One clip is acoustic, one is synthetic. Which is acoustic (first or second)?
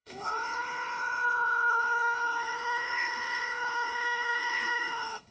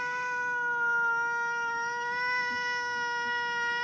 second